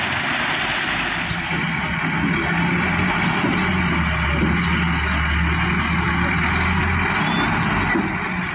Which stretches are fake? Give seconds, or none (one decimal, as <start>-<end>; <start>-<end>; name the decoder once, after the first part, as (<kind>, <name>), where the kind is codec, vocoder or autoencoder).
none